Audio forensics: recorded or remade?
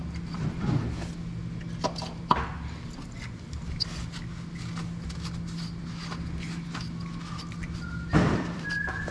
recorded